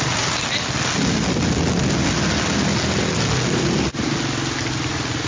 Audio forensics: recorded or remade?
recorded